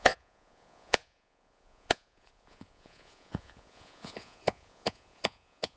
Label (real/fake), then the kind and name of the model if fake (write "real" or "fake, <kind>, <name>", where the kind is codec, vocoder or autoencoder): fake, vocoder, Vocos